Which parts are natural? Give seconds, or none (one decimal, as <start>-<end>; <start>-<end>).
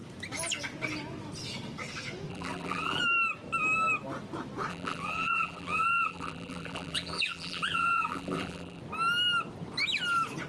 0.0-2.3; 3.0-4.7; 8.8-10.5